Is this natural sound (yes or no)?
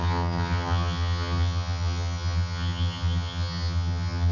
no